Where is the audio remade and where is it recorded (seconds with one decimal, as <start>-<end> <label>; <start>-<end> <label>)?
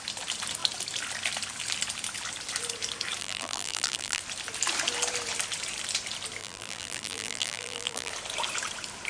0.0-3.2 recorded; 3.2-4.2 remade; 4.2-6.4 recorded; 6.4-8.1 remade; 8.1-9.1 recorded